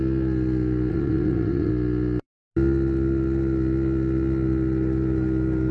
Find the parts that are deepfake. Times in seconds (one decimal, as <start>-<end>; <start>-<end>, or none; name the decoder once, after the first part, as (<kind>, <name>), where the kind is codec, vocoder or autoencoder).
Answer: 0.9-1.7 (vocoder, WaveNeXt)